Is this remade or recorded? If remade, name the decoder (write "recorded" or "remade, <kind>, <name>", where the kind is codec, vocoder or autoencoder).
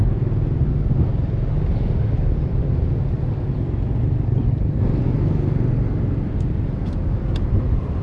recorded